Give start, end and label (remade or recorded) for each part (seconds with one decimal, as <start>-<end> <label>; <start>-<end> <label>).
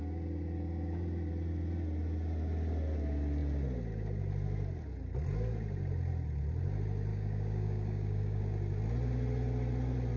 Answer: 0.0-7.1 recorded; 7.1-8.4 remade; 8.4-10.2 recorded